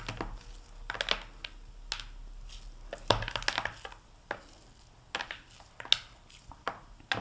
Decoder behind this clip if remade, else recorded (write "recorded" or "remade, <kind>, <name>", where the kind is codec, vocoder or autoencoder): recorded